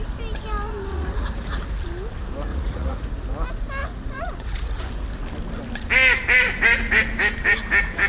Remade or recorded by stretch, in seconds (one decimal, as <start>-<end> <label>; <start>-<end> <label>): 0.0-0.9 recorded; 0.9-1.6 remade; 1.6-2.5 recorded; 2.5-3.1 remade; 3.1-3.8 recorded; 3.8-4.8 remade; 4.8-8.1 recorded